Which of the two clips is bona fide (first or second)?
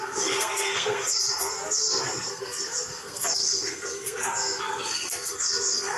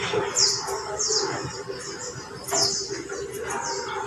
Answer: second